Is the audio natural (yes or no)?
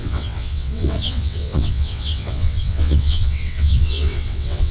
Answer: no